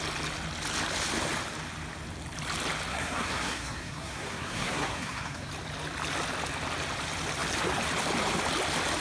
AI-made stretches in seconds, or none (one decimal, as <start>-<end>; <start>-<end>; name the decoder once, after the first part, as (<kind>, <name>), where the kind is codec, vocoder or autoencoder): 2.9-5.5 (codec, SNAC)

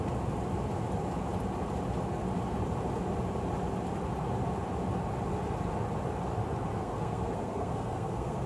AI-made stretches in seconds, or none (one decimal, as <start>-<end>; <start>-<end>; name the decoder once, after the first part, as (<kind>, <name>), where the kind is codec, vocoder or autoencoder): 6.8-8.5 (codec, SNAC)